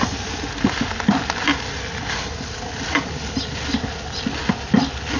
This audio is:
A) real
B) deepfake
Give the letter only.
A